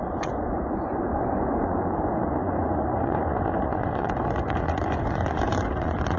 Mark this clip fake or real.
fake